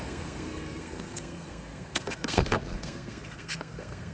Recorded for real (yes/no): no